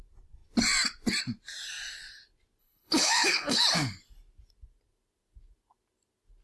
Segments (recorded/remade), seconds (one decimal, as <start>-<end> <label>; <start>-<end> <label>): 0.0-2.6 recorded; 2.6-3.6 remade; 3.6-6.4 recorded